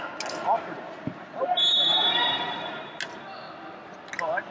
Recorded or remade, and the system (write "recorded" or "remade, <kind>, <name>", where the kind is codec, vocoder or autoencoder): recorded